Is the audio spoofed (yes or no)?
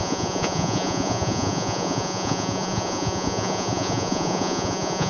yes